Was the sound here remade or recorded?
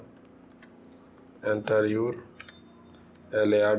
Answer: recorded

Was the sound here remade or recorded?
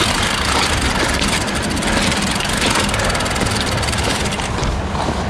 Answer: recorded